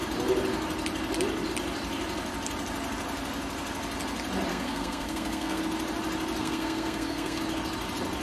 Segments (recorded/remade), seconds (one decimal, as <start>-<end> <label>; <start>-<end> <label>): 0.0-4.5 recorded; 4.5-5.6 remade; 5.6-6.4 recorded; 6.4-7.4 remade; 7.4-8.2 recorded